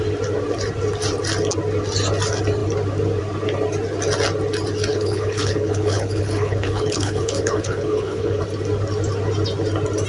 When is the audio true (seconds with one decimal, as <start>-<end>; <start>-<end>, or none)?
0.0-4.9; 8.4-10.1